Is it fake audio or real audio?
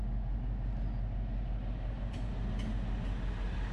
real